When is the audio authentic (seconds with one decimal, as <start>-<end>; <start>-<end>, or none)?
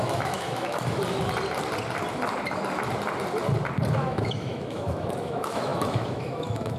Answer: 1.0-3.9